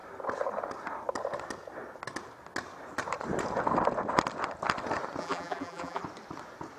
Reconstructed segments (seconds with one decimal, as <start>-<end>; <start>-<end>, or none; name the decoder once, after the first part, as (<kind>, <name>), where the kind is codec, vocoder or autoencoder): 5.2-6.0 (vocoder, BigVGAN v2)

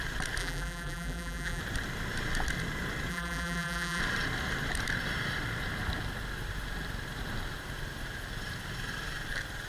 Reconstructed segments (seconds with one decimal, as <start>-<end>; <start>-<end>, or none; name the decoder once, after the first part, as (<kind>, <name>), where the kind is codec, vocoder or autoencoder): 0.4-1.6 (vocoder, BigVGAN v2); 3.1-4.0

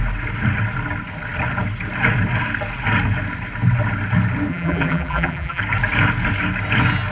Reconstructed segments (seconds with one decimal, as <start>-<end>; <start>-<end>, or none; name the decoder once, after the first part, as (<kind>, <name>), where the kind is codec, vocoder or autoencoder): 4.5-5.6 (vocoder, BigVGAN v2)

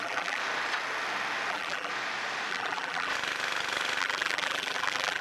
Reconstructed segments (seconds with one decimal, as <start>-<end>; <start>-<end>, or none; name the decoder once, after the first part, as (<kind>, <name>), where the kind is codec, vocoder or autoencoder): 0.0-0.4 (vocoder, BigVGAN v2); 1.5-1.9; 2.5-3.1; 4.0-5.2

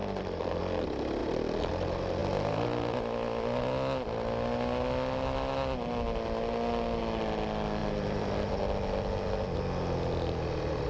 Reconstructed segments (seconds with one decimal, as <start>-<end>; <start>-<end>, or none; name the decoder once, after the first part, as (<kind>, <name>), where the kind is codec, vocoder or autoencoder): 0.0-0.6 (vocoder, BigVGAN v2); 1.2-1.7; 7.8-8.6

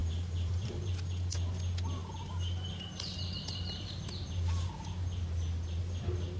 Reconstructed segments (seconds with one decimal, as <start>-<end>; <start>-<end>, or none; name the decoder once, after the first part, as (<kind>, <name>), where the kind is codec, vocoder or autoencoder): 0.0-0.9 (vocoder, BigVGAN v2)

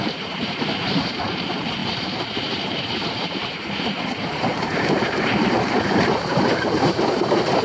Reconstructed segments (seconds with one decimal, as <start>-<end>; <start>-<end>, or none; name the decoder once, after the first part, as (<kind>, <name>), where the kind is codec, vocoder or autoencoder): 0.0-7.6 (vocoder, BigVGAN v2)